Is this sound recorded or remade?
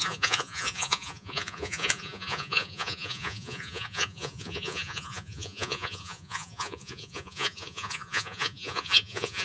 remade